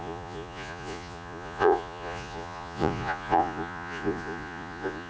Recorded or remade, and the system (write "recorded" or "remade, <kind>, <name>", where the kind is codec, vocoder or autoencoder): remade, vocoder, Vocos